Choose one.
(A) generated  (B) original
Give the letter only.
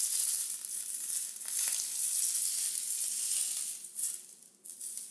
B